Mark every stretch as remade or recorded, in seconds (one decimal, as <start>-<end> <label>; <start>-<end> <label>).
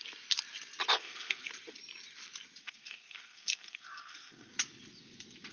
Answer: 0.0-0.9 recorded; 0.9-1.5 remade; 1.5-2.6 recorded; 2.6-4.5 remade; 4.5-5.5 recorded